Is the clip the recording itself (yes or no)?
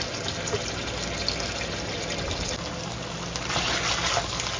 yes